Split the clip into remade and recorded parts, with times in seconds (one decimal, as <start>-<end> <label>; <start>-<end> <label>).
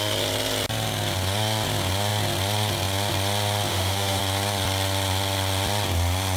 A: 0.0-3.7 recorded; 3.7-4.2 remade; 4.2-6.4 recorded